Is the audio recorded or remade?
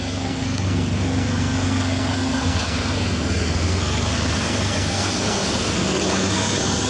remade